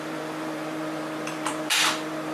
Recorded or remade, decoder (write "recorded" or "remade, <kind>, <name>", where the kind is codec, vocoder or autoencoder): remade, vocoder, BigVGAN v2